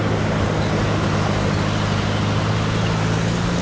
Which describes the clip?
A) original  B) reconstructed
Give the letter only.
A